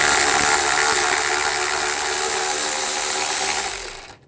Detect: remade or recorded recorded